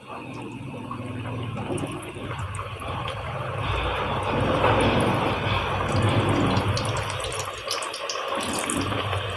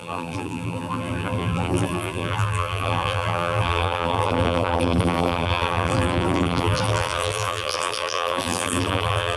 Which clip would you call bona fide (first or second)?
first